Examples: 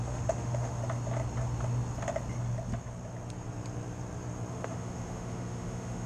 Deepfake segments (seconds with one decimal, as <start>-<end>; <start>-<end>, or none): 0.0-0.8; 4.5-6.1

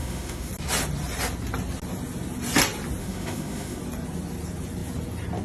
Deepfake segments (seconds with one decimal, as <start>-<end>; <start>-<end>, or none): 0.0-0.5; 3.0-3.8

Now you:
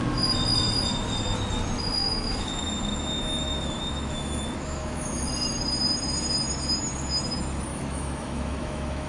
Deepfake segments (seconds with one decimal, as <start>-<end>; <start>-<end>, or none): 2.0-5.3; 7.7-9.1

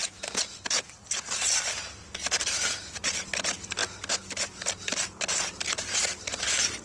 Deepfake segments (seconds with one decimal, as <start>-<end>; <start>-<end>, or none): none